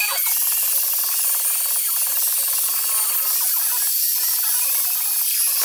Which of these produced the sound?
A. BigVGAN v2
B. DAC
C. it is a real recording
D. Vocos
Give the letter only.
C